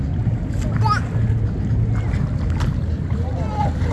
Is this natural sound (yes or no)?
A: yes